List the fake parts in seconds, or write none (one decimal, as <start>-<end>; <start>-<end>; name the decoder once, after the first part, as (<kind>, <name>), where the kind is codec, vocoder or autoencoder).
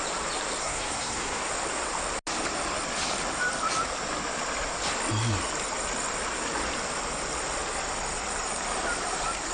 0.6-1.4 (codec, SNAC)